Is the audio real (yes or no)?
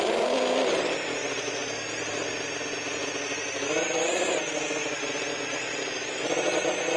yes